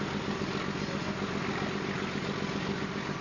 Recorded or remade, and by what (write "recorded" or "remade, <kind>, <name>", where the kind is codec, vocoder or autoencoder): recorded